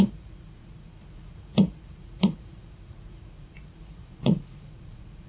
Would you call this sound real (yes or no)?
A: no